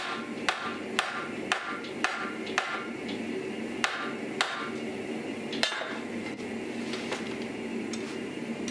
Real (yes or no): yes